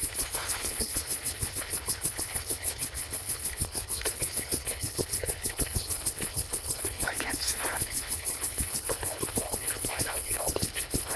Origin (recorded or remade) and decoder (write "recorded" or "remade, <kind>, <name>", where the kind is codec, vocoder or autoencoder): remade, codec, HILCodec